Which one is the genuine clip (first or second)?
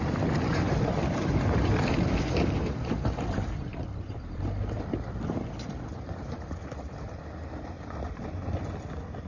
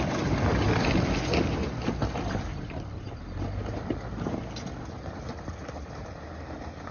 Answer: second